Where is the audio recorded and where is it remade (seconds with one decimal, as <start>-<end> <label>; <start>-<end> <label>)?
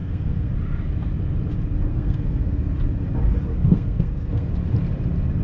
0.0-0.5 remade; 0.5-1.9 recorded; 1.9-2.6 remade; 2.6-3.5 recorded; 3.5-4.5 remade; 4.5-5.4 recorded